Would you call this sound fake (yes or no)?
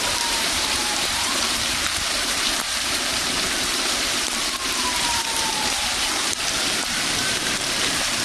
yes